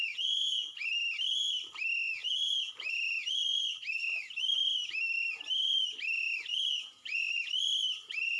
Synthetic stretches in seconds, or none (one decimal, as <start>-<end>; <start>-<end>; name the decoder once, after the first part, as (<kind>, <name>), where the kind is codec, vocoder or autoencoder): 0.0-0.9 (vocoder, Vocos); 2.2-2.7; 6.5-7.2

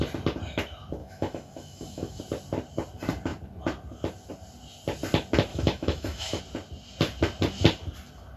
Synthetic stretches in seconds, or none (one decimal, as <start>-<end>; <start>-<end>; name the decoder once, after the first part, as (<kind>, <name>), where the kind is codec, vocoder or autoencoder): 1.0-2.2 (autoencoder, DAC-VAE); 5.5-6.4

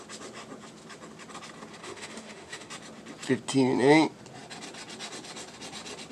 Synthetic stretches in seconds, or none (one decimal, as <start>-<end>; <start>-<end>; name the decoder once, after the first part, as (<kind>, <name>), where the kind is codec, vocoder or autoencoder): 1.8-2.7 (autoencoder, DAC-VAE)

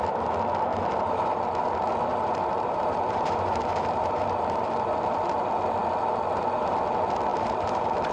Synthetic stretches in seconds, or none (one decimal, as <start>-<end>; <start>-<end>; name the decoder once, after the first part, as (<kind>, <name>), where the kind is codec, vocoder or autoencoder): 0.7-1.4 (vocoder, BigVGAN v2); 2.1-4.9; 7.3-8.1

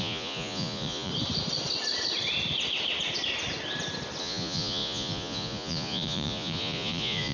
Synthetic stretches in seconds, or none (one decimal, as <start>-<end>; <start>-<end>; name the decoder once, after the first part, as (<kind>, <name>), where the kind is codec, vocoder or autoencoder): 0.0-1.1 (vocoder, Vocos); 4.2-7.3

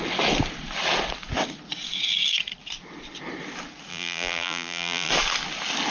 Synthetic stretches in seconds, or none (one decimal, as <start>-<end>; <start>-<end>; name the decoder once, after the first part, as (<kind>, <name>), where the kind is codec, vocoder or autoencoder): 3.9-5.1 (vocoder, BigVGAN v2)

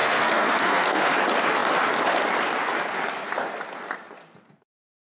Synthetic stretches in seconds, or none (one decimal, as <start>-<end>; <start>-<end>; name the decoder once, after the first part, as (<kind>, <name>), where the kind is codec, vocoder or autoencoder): 0.0-1.1 (codec, SNAC)